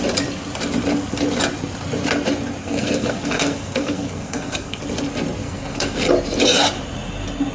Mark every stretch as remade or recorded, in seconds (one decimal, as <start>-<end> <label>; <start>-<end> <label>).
0.0-2.6 recorded; 2.6-4.8 remade; 4.8-5.4 recorded; 5.4-6.1 remade; 6.1-7.5 recorded